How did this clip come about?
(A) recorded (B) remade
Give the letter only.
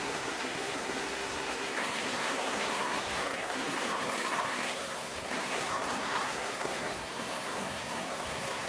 B